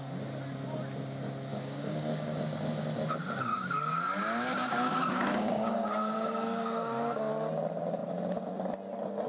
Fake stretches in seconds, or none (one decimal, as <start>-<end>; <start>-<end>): 1.5-2.4; 3.5-7.3